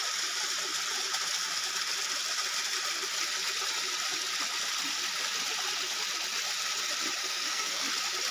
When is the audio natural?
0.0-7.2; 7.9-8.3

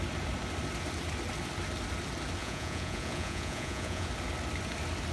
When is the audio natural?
0.0-2.4; 4.1-5.1